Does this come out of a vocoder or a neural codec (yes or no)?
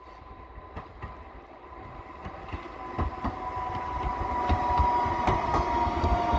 no